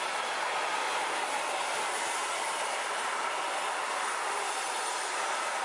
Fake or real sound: real